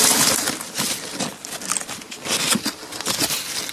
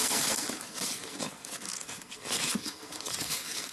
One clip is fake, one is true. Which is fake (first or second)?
second